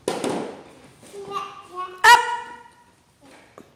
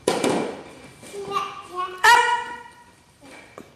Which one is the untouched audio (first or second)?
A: first